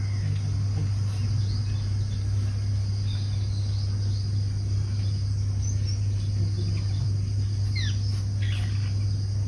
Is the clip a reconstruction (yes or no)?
no